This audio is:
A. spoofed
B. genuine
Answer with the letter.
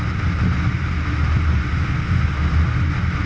B